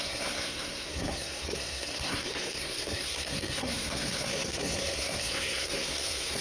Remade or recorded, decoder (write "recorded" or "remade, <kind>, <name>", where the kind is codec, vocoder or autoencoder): remade, codec, SNAC